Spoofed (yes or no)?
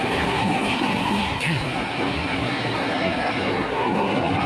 yes